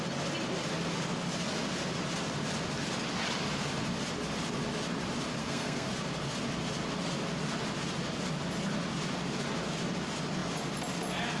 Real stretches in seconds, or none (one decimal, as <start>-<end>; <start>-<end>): 0.0-5.4; 5.9-11.4